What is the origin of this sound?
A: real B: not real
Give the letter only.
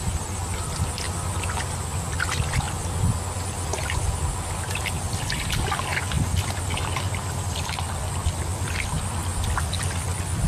A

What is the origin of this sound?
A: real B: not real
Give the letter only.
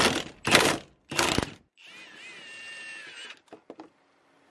A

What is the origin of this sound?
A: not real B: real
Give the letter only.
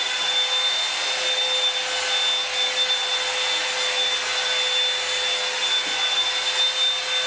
B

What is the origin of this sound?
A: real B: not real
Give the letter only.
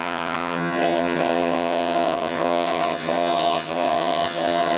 B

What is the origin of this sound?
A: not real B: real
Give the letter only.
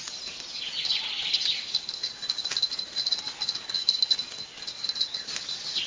B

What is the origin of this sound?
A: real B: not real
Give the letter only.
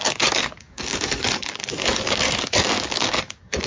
B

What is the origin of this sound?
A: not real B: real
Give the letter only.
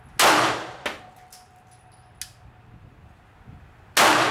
B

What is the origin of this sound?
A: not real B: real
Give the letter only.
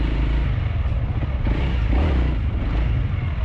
B